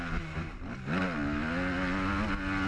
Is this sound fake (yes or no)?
no